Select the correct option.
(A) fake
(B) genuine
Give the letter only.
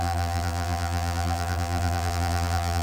A